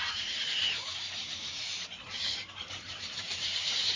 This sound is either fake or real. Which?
fake